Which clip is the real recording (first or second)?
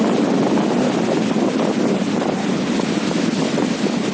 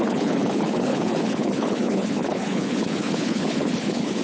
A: first